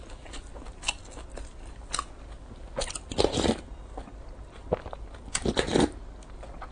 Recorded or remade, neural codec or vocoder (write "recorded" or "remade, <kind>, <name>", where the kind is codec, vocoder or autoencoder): recorded